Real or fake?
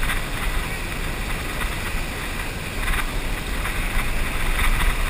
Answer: real